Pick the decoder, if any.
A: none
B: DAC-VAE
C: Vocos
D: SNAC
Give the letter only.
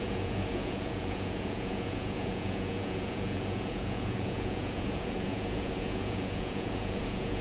C